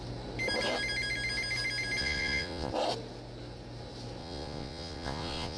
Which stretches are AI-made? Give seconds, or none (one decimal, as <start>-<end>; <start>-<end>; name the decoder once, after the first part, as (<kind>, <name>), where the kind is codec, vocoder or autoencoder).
2.0-2.7 (vocoder, Vocos); 4.2-5.6